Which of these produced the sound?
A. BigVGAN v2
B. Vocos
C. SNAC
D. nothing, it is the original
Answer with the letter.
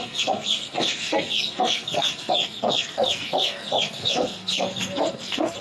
C